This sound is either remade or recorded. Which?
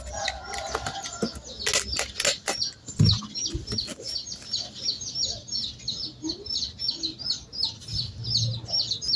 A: recorded